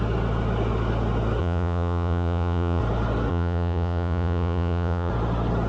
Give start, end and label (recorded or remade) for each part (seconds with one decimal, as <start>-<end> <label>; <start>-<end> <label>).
0.0-1.4 recorded; 1.4-2.8 remade; 2.8-3.3 recorded; 3.3-5.1 remade; 5.1-5.7 recorded